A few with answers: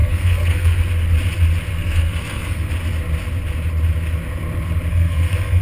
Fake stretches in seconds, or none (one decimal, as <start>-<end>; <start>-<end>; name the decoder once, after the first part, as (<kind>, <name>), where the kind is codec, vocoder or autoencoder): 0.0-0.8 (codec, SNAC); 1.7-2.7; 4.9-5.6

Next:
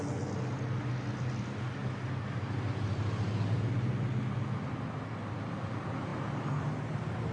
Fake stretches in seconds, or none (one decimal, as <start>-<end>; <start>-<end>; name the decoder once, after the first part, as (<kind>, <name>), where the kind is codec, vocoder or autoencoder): none

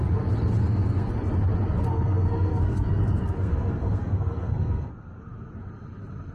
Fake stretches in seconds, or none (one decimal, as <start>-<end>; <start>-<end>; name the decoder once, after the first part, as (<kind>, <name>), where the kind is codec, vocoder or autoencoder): 0.6-1.1 (codec, SNAC); 1.9-5.2